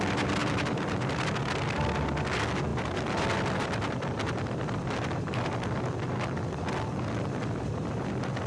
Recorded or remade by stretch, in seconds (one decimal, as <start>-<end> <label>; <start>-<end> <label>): 0.0-0.4 recorded; 0.4-1.4 remade; 1.4-2.7 recorded; 2.7-5.5 remade; 5.5-8.5 recorded